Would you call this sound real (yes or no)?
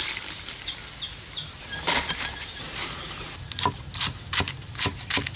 yes